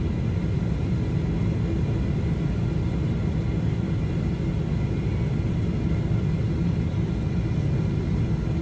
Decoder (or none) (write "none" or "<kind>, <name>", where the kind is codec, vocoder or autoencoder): none